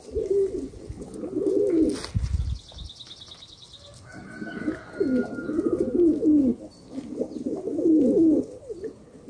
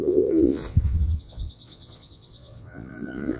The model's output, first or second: second